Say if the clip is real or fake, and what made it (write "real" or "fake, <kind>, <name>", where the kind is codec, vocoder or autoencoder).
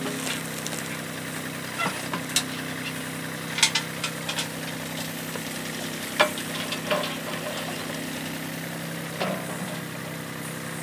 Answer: real